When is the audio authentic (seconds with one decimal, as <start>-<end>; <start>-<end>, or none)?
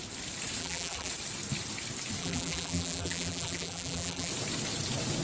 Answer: 0.0-0.6; 1.1-2.2; 4.3-5.2